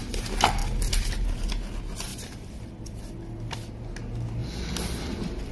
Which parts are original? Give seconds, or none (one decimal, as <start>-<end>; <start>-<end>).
0.0-2.1; 3.7-4.4